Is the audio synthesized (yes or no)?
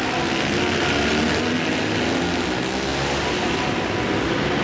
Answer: no